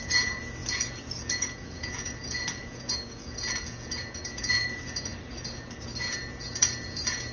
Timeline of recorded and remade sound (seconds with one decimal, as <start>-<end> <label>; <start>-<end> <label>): 0.0-5.1 remade; 5.1-6.1 recorded; 6.1-7.3 remade